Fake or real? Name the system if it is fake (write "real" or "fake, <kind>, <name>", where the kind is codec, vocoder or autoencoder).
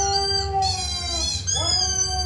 real